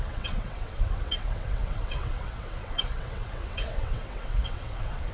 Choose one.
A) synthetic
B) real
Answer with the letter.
A